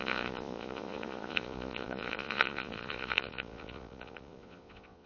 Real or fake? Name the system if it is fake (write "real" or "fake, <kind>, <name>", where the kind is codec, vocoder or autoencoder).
fake, vocoder, Vocos